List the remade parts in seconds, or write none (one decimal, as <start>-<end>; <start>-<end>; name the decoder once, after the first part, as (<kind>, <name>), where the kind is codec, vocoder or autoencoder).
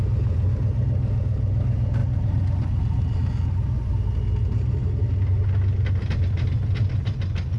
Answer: none